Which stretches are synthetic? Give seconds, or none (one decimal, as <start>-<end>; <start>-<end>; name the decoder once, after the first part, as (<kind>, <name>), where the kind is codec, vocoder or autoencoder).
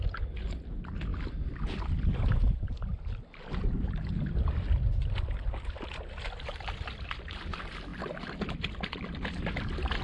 none